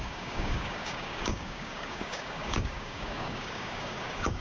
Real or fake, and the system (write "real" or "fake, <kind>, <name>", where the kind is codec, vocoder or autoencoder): fake, codec, DAC